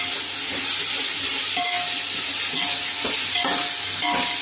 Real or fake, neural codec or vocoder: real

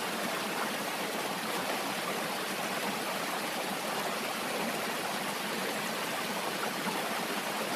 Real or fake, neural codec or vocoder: real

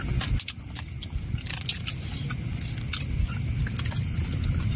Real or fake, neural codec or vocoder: real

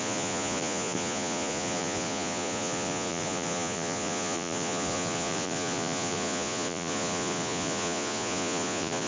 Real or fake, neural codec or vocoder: fake, vocoder, Vocos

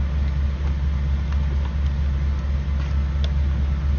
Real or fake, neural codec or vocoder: real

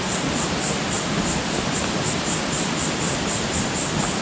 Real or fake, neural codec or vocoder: real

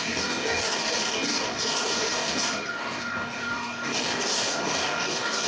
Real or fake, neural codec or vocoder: fake, codec, DAC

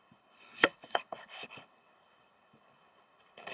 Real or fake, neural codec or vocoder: fake, codec, HILCodec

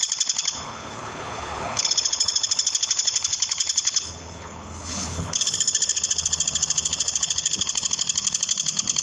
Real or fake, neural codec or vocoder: fake, codec, HILCodec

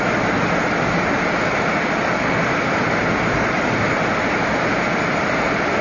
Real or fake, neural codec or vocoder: real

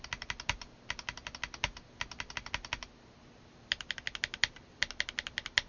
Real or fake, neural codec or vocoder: real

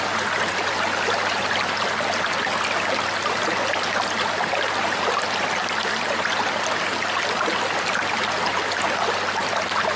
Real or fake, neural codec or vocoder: real